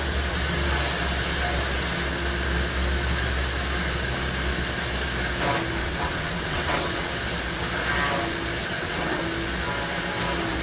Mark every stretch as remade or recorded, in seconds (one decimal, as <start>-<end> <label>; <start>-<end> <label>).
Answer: 0.0-5.8 recorded; 5.8-7.1 remade; 7.1-8.6 recorded; 8.6-9.2 remade; 9.2-10.6 recorded